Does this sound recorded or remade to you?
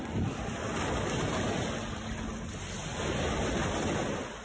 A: recorded